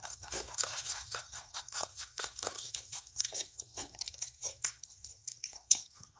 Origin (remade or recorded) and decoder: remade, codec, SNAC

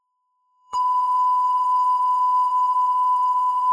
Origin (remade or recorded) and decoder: remade, codec, SNAC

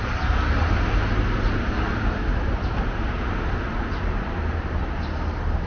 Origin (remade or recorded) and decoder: recorded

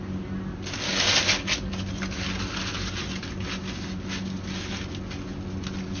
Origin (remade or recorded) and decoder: recorded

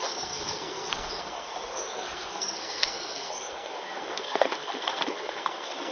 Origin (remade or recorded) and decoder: remade, codec, SNAC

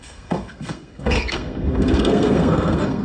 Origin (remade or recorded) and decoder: remade, codec, SNAC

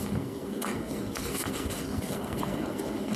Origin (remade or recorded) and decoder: remade, codec, SNAC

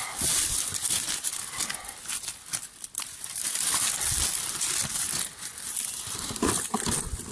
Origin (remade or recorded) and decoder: recorded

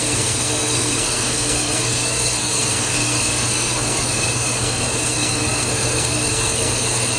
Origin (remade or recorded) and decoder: remade, codec, SNAC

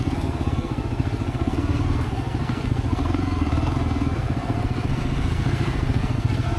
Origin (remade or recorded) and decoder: remade, codec, SNAC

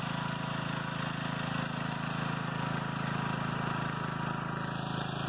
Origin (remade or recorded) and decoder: recorded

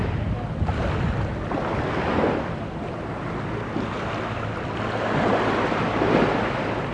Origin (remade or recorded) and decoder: recorded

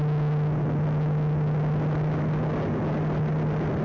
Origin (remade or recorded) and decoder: recorded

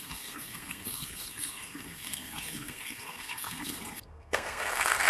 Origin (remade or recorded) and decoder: remade, codec, SNAC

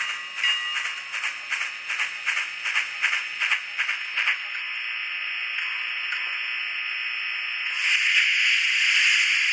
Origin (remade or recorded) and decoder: recorded